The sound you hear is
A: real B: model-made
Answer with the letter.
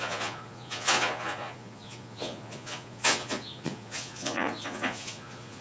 B